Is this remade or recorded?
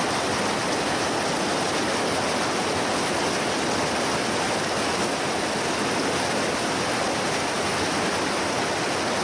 recorded